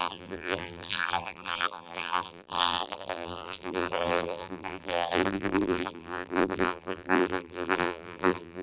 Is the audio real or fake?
fake